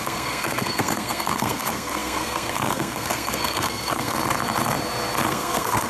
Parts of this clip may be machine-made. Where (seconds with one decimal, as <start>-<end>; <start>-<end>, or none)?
0.0-4.2; 5.3-5.9